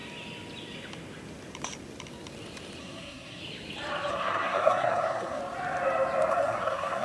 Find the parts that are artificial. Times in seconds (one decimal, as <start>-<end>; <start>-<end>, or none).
2.8-3.4; 4.1-5.4; 6.3-7.0